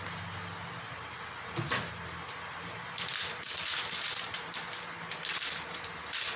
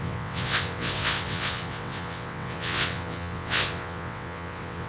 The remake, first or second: second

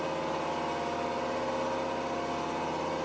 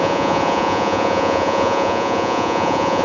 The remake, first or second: second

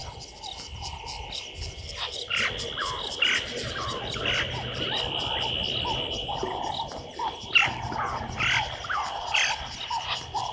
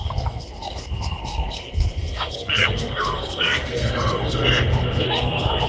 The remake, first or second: second